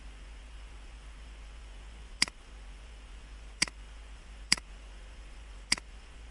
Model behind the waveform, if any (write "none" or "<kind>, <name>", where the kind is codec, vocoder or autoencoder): vocoder, Vocos